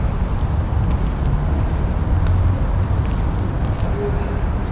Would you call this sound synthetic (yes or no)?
no